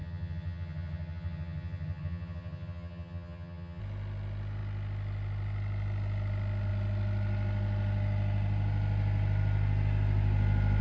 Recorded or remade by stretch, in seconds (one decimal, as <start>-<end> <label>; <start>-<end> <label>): 0.0-3.8 remade; 3.8-10.8 recorded